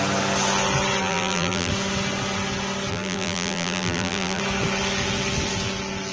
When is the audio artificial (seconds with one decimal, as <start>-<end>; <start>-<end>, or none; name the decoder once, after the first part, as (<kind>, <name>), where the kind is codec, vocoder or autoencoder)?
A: 1.0-1.7 (vocoder, BigVGAN v2); 2.9-4.4